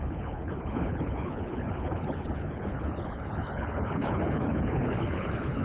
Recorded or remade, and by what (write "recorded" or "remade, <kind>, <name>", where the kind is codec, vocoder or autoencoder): remade, codec, HILCodec